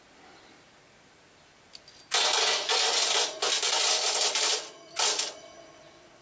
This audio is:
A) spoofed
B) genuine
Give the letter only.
B